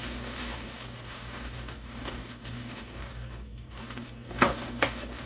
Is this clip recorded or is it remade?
remade